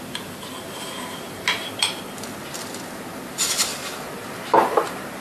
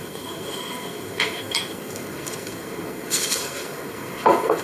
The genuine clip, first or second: first